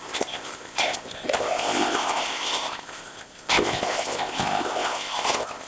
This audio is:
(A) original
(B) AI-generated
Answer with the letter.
B